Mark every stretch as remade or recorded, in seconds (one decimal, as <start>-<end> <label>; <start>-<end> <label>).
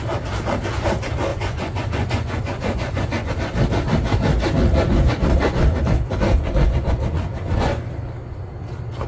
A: 0.0-1.3 recorded; 1.3-3.3 remade; 3.3-4.7 recorded; 4.7-7.8 remade; 7.8-9.1 recorded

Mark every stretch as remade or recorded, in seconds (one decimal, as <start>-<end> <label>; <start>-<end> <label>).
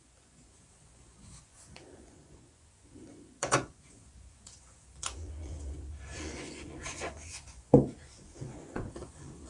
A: 0.0-9.5 remade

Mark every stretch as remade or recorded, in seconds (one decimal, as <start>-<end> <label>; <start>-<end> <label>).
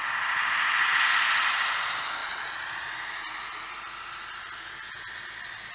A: 0.0-2.2 recorded; 2.2-2.9 remade; 2.9-5.7 recorded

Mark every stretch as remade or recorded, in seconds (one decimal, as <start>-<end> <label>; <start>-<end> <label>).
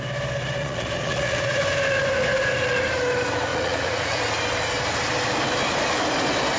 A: 0.0-0.6 recorded; 0.6-1.6 remade; 1.6-3.5 recorded; 3.5-4.2 remade; 4.2-6.6 recorded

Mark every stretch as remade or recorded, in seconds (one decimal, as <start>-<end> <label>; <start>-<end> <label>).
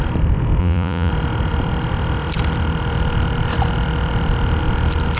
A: 0.0-0.6 recorded; 0.6-1.1 remade; 1.1-5.2 recorded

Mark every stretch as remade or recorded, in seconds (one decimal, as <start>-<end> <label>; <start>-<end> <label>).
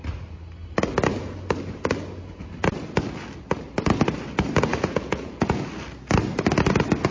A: 0.0-4.7 recorded; 4.7-5.7 remade; 5.7-7.1 recorded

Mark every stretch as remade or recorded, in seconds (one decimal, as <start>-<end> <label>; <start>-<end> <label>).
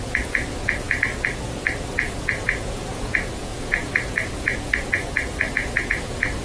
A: 0.0-1.1 remade; 1.1-1.9 recorded; 1.9-6.4 remade